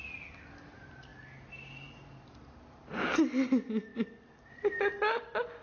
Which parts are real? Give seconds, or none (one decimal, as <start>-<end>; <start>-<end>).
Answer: 0.0-5.6